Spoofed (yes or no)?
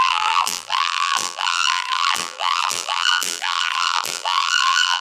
yes